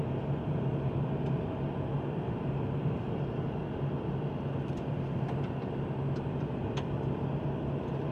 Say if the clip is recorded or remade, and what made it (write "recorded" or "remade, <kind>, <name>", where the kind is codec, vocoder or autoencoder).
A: remade, vocoder, BigVGAN v2